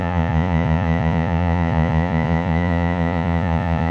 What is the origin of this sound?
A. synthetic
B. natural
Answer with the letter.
A